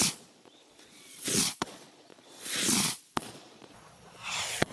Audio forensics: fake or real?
fake